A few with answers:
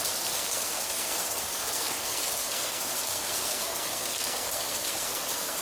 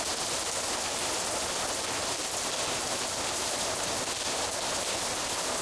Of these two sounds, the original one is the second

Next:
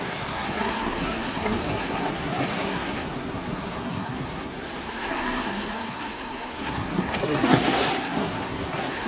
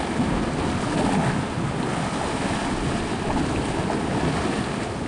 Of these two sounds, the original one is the second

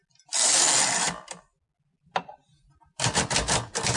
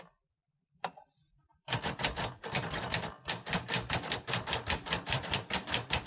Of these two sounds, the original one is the first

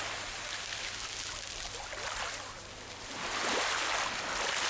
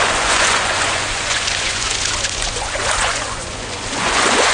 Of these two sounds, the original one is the first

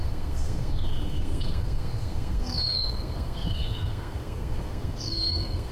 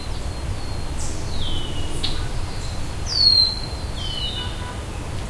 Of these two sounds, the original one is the second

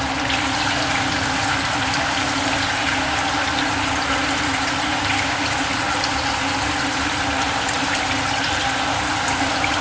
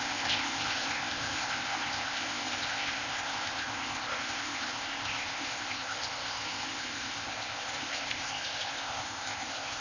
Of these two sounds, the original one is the first